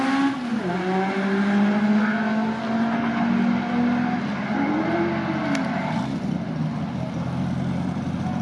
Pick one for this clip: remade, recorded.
recorded